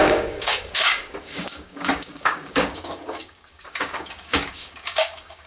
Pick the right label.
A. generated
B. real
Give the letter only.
A